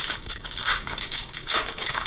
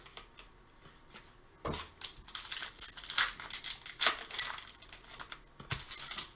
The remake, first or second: first